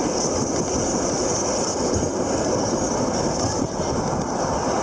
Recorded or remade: recorded